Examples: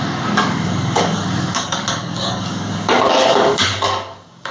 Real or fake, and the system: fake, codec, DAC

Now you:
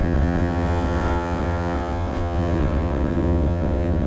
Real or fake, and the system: fake, vocoder, WaveNeXt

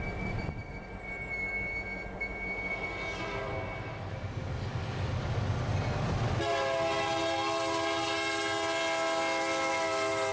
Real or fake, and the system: real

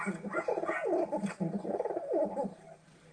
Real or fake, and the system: real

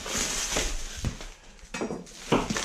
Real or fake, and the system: real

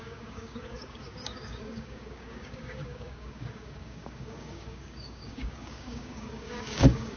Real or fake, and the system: fake, codec, DAC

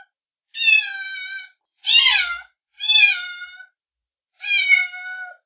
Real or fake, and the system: real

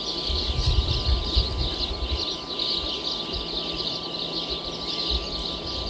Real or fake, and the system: real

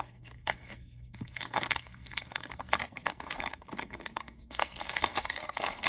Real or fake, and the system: fake, codec, SNAC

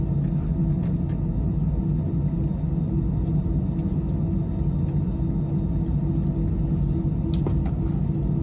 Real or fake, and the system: real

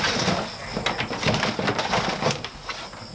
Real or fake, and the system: real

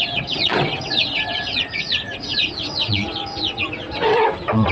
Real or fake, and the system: fake, vocoder, WaveNeXt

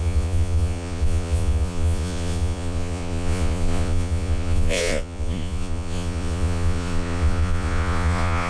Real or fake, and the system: fake, vocoder, Vocos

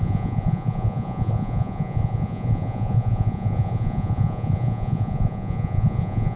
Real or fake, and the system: fake, vocoder, Vocos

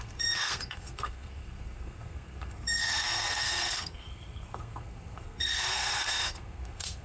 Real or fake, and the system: fake, codec, SNAC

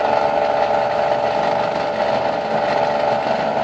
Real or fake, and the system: real